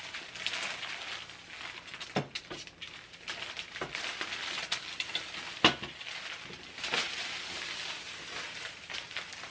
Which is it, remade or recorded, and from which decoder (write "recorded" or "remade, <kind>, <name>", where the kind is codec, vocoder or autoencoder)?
recorded